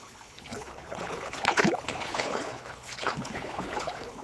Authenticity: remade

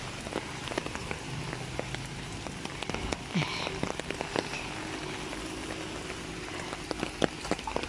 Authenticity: recorded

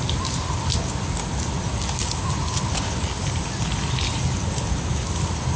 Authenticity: recorded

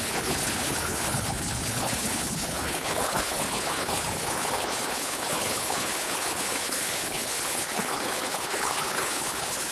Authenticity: remade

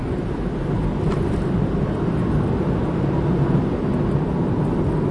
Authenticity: recorded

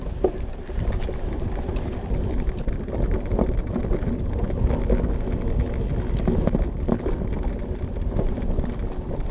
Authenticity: recorded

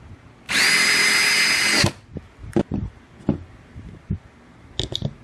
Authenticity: recorded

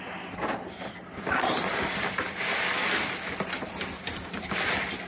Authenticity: recorded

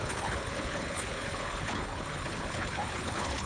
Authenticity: remade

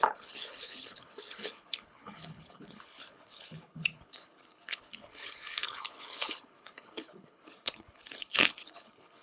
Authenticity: remade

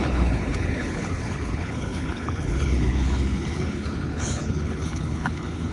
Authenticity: remade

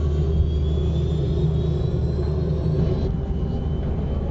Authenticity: recorded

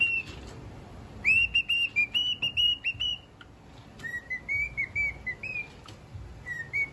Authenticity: recorded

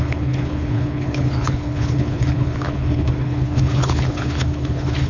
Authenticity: remade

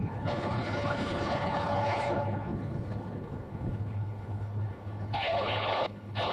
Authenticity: remade